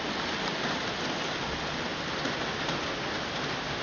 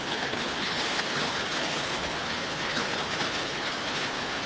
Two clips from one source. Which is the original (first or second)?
first